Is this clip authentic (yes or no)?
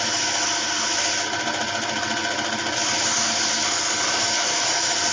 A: yes